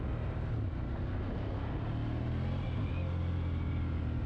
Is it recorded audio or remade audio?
recorded